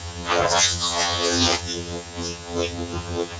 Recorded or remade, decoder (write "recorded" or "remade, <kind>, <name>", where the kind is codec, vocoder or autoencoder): remade, vocoder, HiFi-GAN